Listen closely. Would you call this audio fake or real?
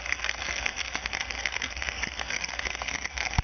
fake